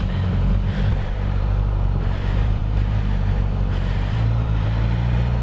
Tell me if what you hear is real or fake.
fake